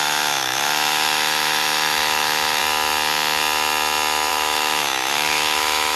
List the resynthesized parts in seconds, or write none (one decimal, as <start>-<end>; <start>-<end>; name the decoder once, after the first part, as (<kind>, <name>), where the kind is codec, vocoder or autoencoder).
0.0-2.6 (autoencoder, DAC-VAE); 4.3-6.0